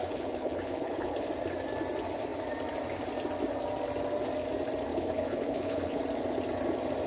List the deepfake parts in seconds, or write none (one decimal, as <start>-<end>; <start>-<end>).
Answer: 0.0-1.3; 4.9-6.0